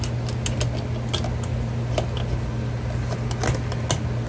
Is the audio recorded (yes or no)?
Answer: yes